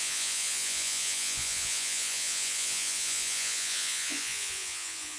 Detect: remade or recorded remade